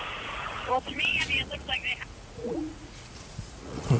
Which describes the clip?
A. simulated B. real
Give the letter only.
A